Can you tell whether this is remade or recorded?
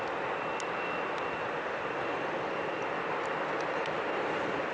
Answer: recorded